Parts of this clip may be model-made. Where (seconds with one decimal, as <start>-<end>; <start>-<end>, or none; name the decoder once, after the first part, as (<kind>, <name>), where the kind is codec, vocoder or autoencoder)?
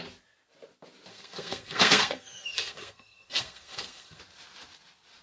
1.1-4.2 (codec, SNAC)